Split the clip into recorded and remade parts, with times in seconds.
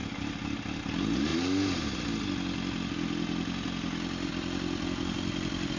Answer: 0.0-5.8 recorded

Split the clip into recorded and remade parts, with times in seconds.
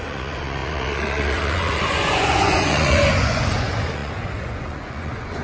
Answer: 0.0-5.4 remade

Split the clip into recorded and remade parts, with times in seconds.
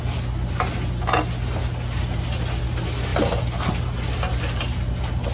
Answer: 0.0-5.3 recorded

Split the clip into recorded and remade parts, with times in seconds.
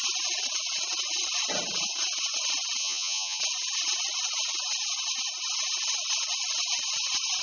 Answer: 0.0-2.8 recorded; 2.8-3.4 remade; 3.4-7.4 recorded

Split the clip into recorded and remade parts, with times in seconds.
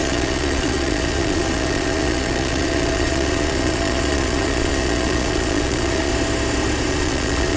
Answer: 0.0-6.1 remade; 6.1-6.9 recorded; 6.9-7.6 remade